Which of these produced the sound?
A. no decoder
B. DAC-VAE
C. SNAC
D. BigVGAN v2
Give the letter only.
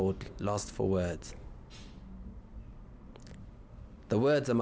A